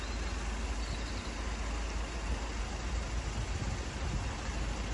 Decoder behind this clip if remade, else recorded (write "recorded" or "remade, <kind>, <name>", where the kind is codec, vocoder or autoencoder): recorded